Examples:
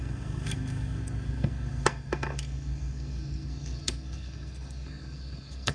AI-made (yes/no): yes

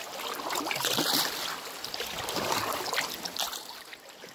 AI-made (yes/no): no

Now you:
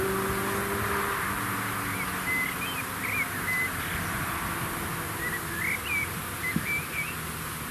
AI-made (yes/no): no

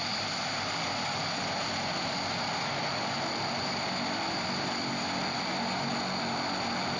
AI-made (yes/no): no